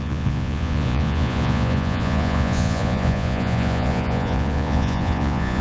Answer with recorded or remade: remade